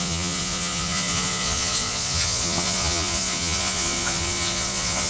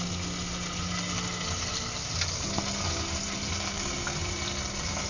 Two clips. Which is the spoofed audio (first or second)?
first